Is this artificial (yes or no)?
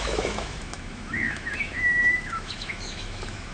yes